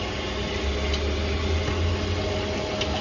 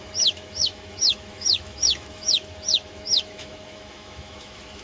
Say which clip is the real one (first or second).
first